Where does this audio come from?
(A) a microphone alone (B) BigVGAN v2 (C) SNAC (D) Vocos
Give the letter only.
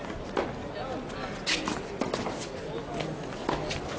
A